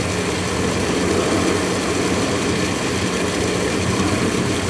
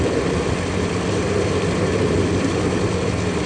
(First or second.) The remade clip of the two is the second